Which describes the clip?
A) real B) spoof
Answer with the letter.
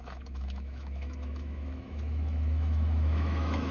B